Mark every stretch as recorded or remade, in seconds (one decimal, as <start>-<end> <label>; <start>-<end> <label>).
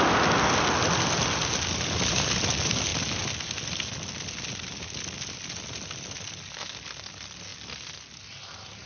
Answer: 0.0-8.9 recorded